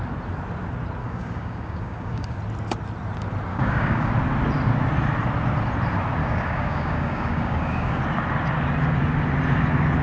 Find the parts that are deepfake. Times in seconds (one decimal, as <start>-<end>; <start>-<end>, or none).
1.0-2.4; 3.5-4.1; 6.2-8.0